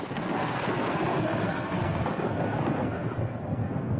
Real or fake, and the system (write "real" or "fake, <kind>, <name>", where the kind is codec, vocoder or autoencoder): fake, codec, SNAC